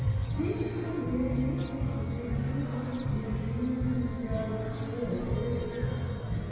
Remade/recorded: recorded